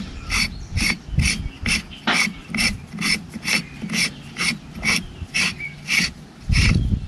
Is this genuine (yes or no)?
yes